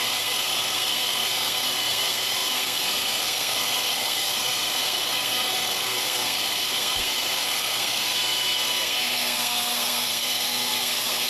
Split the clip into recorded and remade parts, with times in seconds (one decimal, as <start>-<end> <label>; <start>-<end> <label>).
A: 0.0-11.3 remade